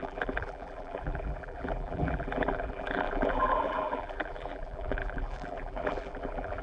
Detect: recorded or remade remade